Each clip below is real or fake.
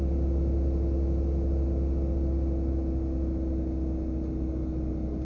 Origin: real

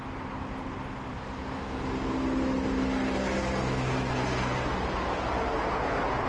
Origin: real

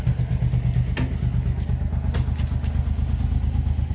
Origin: real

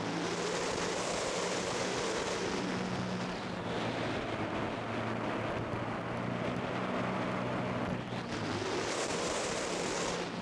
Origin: real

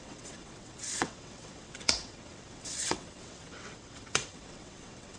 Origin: fake